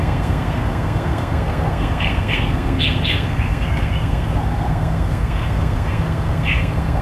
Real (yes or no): no